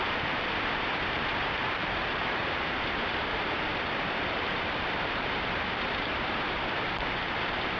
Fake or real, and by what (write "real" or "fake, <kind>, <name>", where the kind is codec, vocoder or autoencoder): fake, vocoder, BigVGAN v2